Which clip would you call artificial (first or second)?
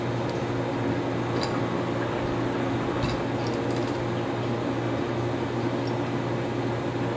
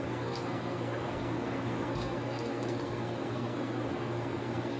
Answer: second